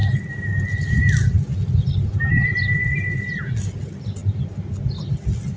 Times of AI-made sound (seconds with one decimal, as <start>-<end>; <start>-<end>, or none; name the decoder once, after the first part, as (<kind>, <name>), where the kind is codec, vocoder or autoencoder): none

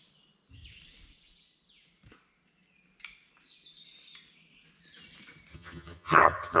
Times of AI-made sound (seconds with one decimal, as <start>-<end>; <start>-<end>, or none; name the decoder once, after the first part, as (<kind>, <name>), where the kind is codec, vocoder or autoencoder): 5.5-6.6 (vocoder, HiFi-GAN)

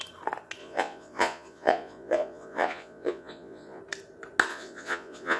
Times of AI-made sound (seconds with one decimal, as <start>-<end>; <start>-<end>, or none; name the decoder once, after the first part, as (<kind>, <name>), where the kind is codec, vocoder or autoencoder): 0.6-3.8 (vocoder, Vocos); 4.5-5.4

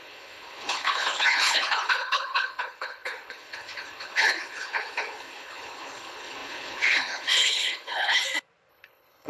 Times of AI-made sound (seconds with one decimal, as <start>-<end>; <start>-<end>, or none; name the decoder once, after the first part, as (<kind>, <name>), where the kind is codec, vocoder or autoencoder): 0.0-8.2 (codec, HILCodec); 8.7-9.3

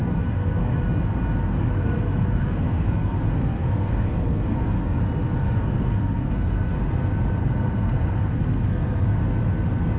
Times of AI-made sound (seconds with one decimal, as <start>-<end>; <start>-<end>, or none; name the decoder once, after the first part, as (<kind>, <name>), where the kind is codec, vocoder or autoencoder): 0.0-0.8 (codec, SNAC); 1.5-5.0; 5.4-6.7; 7.4-9.2